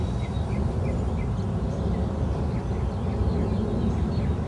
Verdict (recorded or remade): recorded